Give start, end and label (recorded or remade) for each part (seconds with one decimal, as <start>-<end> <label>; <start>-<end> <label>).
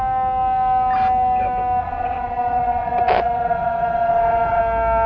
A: 0.0-1.8 recorded; 1.8-4.6 remade; 4.6-5.1 recorded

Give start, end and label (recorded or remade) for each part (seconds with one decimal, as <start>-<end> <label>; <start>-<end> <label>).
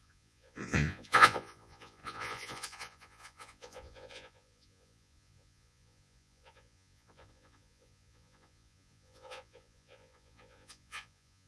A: 0.0-11.5 remade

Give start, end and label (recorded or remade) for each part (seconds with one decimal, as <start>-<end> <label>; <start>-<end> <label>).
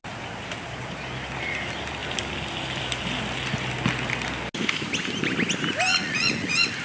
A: 0.0-5.9 recorded; 5.9-6.8 remade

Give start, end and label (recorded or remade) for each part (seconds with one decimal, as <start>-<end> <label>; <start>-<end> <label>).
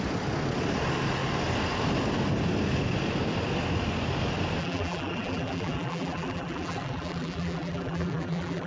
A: 0.0-4.6 recorded; 4.6-8.7 remade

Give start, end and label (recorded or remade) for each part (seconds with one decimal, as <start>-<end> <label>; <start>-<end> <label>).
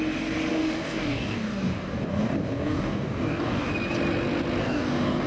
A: 0.0-0.5 recorded; 0.5-3.7 remade; 3.7-4.6 recorded; 4.6-5.3 remade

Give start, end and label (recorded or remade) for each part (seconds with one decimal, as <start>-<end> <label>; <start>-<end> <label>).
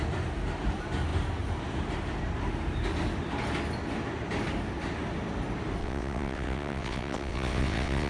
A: 0.0-5.8 recorded; 5.8-8.1 remade